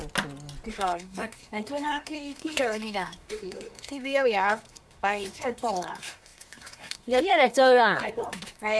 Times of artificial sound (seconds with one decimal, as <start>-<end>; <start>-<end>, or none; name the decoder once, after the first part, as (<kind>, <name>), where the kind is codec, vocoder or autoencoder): 0.7-8.8 (codec, SNAC)